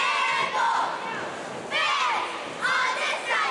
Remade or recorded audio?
recorded